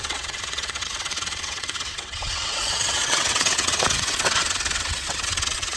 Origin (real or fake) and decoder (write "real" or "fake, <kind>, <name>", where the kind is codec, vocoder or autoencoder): fake, vocoder, WaveNeXt